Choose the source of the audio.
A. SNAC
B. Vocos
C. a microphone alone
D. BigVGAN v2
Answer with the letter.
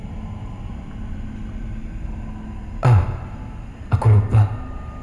C